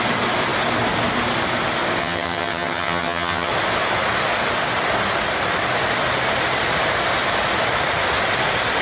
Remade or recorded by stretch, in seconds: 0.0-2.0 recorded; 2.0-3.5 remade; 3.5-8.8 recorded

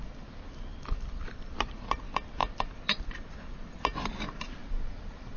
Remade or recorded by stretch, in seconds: 0.0-0.7 recorded; 0.7-1.4 remade; 1.4-2.4 recorded; 2.4-3.8 remade; 3.8-5.4 recorded

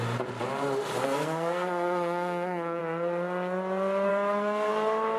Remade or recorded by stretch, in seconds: 0.0-1.0 recorded; 1.0-2.8 remade; 2.8-4.1 recorded; 4.1-4.7 remade; 4.7-5.2 recorded

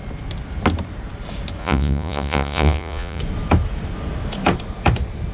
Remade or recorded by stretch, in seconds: 0.0-1.6 recorded; 1.6-3.2 remade; 3.2-5.3 recorded

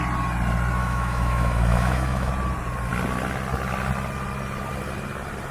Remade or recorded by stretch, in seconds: 0.0-0.8 recorded; 0.8-2.3 remade; 2.3-5.5 recorded

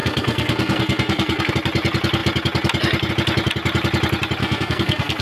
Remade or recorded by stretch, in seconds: 0.0-1.5 remade; 1.5-4.4 recorded; 4.4-5.2 remade

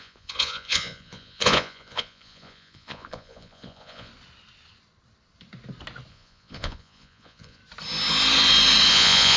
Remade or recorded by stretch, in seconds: 0.0-4.1 remade; 4.1-6.1 recorded; 6.1-7.6 remade; 7.6-8.9 recorded; 8.9-9.4 remade